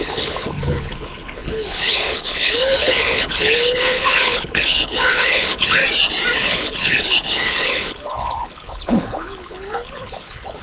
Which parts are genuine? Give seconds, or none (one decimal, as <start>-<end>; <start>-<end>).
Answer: 5.8-6.4

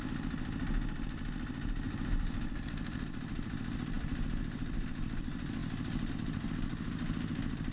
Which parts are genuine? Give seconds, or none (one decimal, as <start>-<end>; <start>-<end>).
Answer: 0.0-7.7